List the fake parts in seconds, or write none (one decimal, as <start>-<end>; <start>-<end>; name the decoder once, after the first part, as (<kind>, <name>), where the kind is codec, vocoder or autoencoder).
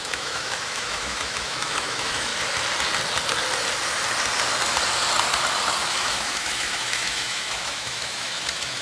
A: 0.0-2.3 (autoencoder, DAC-VAE); 5.8-8.8